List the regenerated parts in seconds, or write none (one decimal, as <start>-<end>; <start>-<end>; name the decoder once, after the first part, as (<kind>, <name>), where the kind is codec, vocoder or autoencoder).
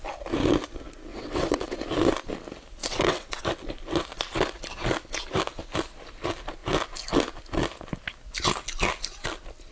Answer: 1.1-1.8 (vocoder, WaveNeXt); 2.8-3.4